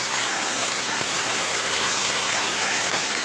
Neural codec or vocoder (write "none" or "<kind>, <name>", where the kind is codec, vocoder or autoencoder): codec, SNAC